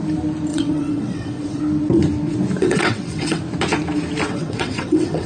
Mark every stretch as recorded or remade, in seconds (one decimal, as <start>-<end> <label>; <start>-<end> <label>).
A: 0.0-0.5 recorded; 0.5-1.6 remade; 1.6-2.6 recorded; 2.6-3.4 remade; 3.4-4.3 recorded; 4.3-5.3 remade